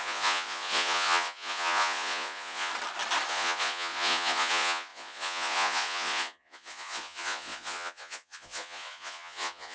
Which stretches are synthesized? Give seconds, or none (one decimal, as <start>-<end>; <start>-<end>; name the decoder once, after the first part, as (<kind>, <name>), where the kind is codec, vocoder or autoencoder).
0.0-2.7 (vocoder, Vocos); 3.3-9.7